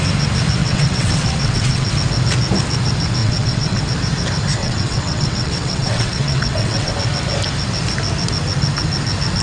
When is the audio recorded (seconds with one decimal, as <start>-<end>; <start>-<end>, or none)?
0.0-0.6; 1.9-3.2; 3.8-4.6; 6.9-9.4